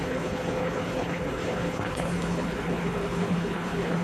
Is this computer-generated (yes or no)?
yes